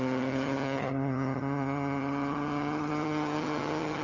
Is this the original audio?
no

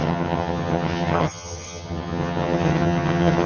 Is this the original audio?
no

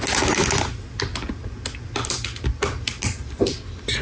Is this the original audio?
yes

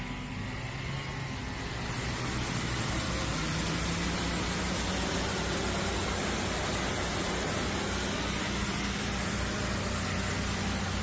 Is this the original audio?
yes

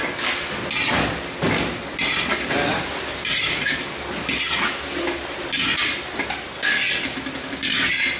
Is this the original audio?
yes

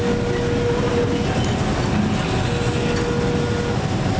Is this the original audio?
yes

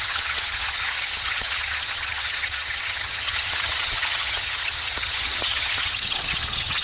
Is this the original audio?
no